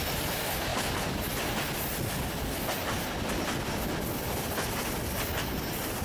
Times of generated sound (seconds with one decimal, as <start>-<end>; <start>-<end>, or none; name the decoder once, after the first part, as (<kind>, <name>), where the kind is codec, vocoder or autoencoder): none